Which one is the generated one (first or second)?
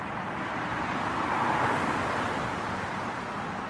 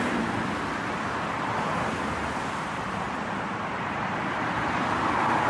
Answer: second